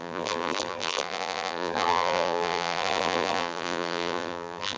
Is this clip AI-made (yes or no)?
yes